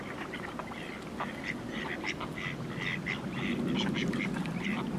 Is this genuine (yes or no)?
yes